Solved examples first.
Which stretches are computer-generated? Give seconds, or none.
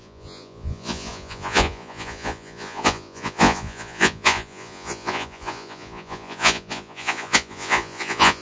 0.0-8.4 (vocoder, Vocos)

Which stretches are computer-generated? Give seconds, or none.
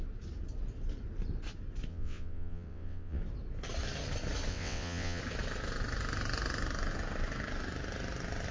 1.9-3.2 (vocoder, WaveNeXt); 4.5-5.2